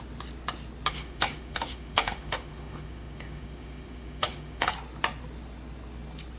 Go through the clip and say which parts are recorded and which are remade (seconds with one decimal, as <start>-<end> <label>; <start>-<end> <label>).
0.0-0.9 recorded; 0.9-4.7 remade; 4.7-6.4 recorded